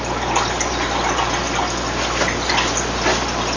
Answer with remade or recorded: recorded